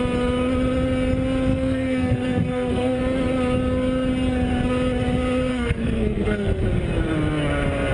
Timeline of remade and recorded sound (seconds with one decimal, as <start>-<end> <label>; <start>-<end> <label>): 0.0-1.5 recorded; 1.5-3.0 remade; 3.0-5.5 recorded; 5.5-6.7 remade; 6.7-7.9 recorded